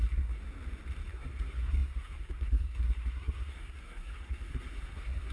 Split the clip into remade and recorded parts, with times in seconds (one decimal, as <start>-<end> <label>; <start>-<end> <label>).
0.0-0.4 remade; 0.4-1.1 recorded; 1.1-5.3 remade